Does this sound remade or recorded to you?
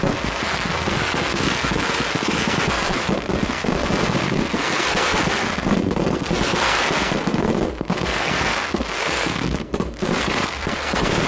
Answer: remade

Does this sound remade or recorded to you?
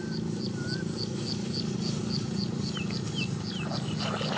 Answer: recorded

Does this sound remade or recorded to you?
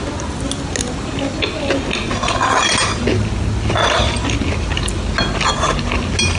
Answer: recorded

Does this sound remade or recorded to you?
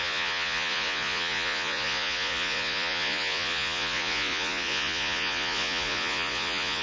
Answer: remade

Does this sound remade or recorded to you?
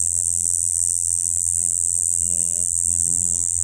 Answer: remade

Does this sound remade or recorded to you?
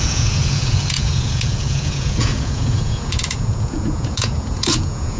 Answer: remade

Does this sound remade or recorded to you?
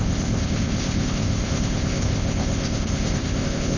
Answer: remade